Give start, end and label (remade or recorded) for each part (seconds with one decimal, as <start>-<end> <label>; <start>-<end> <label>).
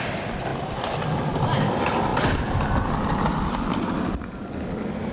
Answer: 0.0-0.5 recorded; 0.5-1.7 remade; 1.7-2.1 recorded; 2.1-4.5 remade; 4.5-5.1 recorded